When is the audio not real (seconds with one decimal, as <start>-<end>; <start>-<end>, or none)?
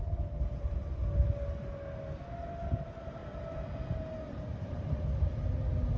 0.0-1.0; 2.7-3.2; 4.7-6.0